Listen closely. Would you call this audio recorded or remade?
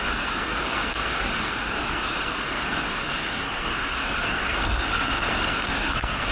remade